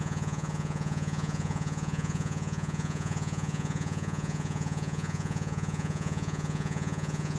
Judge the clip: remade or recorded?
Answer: remade